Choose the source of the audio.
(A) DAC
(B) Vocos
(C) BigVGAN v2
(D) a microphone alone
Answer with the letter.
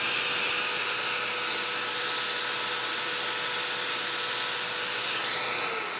D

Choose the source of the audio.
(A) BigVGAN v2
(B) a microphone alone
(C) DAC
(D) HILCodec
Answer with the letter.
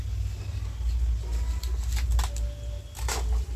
B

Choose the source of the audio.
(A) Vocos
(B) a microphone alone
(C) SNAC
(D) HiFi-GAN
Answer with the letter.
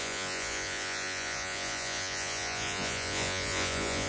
A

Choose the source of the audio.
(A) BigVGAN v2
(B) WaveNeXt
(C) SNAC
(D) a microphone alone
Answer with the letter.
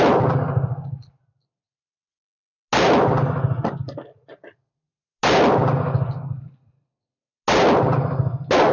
D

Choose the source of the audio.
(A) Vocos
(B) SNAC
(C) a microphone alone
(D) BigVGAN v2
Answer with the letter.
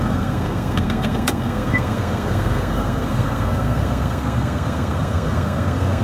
B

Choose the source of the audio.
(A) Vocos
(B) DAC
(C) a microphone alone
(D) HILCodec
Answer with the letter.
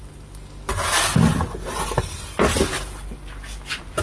C